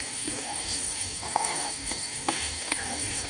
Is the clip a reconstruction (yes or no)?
yes